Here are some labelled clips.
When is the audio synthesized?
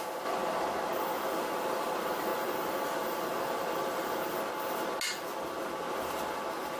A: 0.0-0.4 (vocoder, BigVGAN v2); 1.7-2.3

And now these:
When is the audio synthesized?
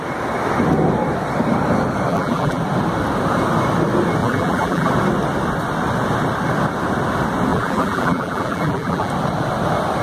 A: 2.1-2.6 (vocoder, BigVGAN v2); 4.2-4.9; 7.5-9.1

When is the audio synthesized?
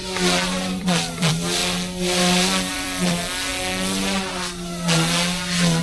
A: 0.8-1.6 (vocoder, BigVGAN v2); 2.7-3.5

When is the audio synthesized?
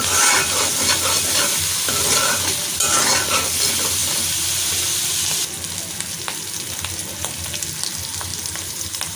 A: 8.3-9.2 (vocoder, BigVGAN v2)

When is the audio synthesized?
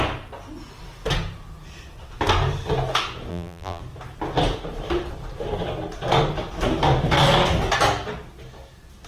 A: 3.3-3.8 (vocoder, BigVGAN v2)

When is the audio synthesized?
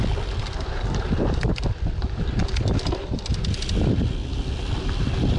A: 0.0-3.3 (vocoder, BigVGAN v2); 5.0-5.4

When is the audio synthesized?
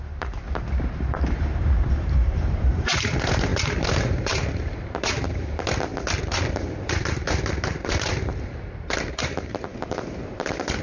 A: 0.0-5.9 (vocoder, BigVGAN v2); 6.5-10.8